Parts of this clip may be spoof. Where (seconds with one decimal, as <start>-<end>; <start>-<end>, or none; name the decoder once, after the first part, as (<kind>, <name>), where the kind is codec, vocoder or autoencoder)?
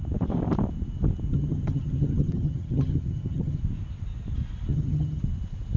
1.3-3.6 (vocoder, HiFi-GAN); 4.7-5.2